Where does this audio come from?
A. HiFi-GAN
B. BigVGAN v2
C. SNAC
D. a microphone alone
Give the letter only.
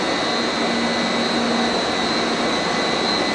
D